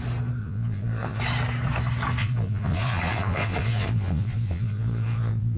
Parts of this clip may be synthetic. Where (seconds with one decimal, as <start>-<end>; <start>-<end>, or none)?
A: 0.4-1.2; 2.2-5.6